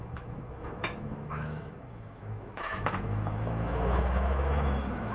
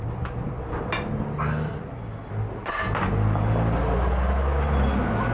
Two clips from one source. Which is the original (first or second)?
second